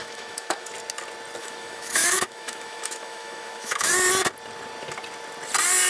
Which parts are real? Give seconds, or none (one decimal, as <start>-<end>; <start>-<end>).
0.7-1.4; 3.9-5.9

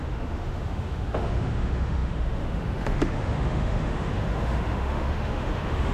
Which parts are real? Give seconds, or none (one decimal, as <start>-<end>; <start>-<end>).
none

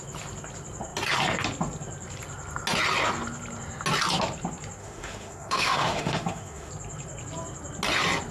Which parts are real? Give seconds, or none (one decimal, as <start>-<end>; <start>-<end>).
0.0-4.8; 6.7-8.3

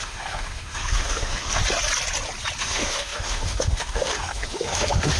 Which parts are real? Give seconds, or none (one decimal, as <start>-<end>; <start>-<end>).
1.6-2.6

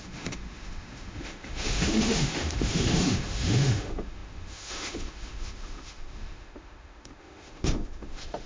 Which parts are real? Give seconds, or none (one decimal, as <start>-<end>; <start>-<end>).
none

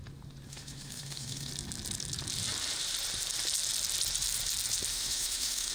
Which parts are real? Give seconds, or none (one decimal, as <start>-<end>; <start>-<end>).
0.0-0.5; 1.5-4.9